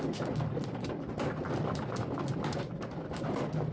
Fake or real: fake